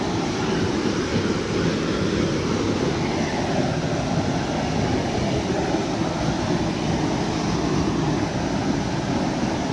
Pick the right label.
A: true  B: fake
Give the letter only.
A